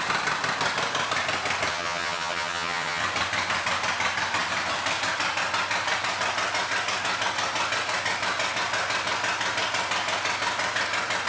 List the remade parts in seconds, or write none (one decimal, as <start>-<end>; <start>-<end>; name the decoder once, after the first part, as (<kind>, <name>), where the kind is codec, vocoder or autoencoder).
1.7-3.0 (vocoder, HiFi-GAN)